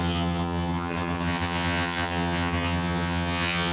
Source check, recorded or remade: remade